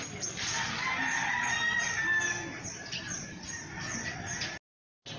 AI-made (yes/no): no